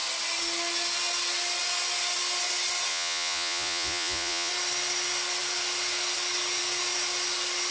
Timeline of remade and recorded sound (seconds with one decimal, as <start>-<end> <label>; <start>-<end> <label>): 0.0-2.9 recorded; 2.9-4.5 remade; 4.5-7.7 recorded